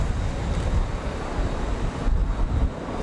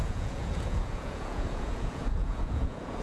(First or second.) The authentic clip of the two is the first